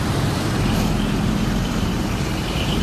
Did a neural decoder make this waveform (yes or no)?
yes